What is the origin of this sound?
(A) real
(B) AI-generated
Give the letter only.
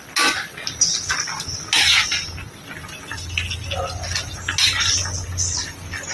A